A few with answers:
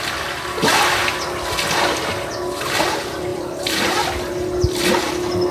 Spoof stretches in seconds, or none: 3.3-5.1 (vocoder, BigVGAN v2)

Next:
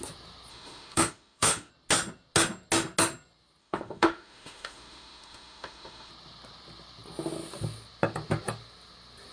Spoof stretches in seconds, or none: 0.5-1.7 (autoencoder, DAC-VAE); 3.6-6.1

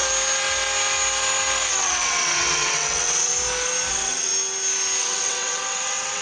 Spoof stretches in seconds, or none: 1.7-3.3 (vocoder, WaveNeXt); 3.9-4.3; 5.0-6.2

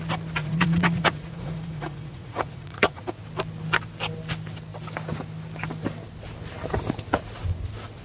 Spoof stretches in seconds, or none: 0.4-3.0 (vocoder, Vocos)

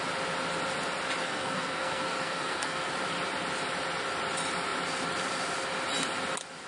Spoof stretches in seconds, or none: 1.2-2.9 (codec, SNAC)

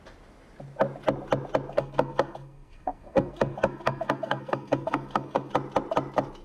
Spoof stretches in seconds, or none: 1.7-5.5 (codec, SNAC)

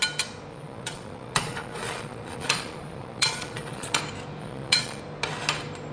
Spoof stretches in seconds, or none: 0.5-4.0 (vocoder, Vocos); 4.4-5.0